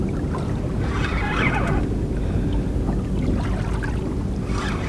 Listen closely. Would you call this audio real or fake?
real